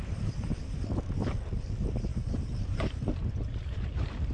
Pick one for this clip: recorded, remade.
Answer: remade